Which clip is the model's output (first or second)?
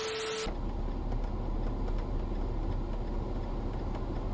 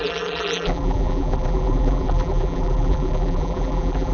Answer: second